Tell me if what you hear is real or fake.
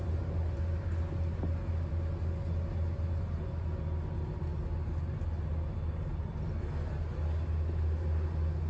real